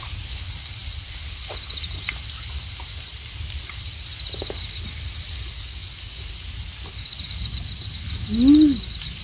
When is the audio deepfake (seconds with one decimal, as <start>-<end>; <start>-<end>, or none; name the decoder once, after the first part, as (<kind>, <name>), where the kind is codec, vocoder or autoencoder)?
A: none